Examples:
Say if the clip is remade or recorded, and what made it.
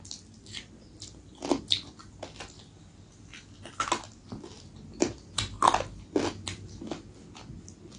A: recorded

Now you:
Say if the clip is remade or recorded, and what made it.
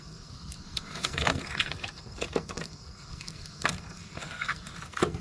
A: remade, codec, SNAC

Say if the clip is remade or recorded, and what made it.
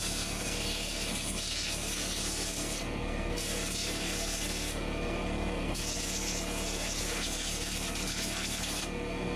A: remade, codec, SNAC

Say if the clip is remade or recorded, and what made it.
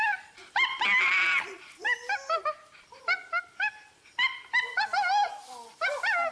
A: recorded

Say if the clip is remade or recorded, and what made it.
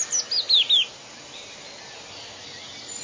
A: recorded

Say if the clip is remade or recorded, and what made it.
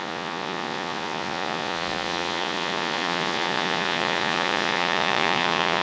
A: remade, vocoder, Vocos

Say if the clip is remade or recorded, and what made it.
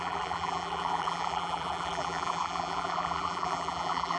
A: remade, vocoder, BigVGAN v2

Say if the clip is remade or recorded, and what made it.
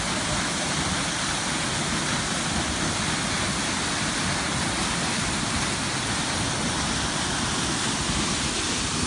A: recorded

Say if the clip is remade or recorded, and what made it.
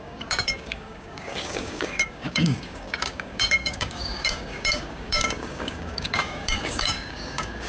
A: remade, codec, DAC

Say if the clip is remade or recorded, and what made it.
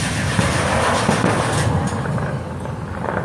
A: recorded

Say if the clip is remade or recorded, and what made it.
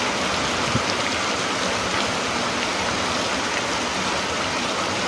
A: recorded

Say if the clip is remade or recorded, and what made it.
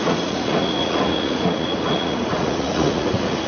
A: remade, vocoder, Vocos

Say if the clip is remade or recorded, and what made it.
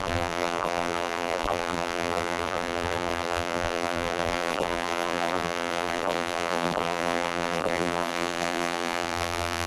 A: remade, vocoder, BigVGAN v2